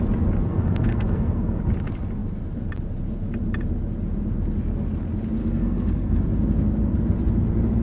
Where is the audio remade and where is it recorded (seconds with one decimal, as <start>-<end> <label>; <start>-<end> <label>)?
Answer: 0.0-0.5 recorded; 0.5-1.6 remade; 1.6-5.4 recorded; 5.4-6.2 remade; 6.2-7.8 recorded